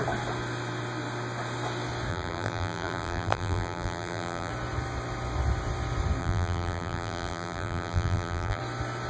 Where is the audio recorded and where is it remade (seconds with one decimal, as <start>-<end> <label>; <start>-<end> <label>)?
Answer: 0.0-2.1 recorded; 2.1-4.5 remade; 4.5-6.2 recorded; 6.2-8.6 remade; 8.6-9.1 recorded